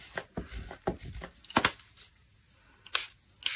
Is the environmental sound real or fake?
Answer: real